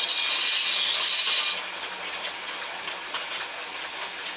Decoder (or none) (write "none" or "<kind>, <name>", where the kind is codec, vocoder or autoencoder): none